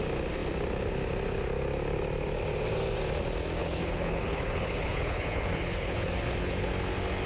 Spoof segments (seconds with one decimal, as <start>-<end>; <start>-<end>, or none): 3.6-6.7